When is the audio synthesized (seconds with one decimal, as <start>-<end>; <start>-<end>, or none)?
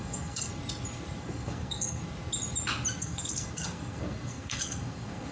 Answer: 0.0-0.5; 1.2-2.0; 3.0-5.3